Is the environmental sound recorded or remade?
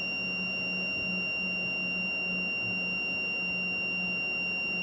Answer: recorded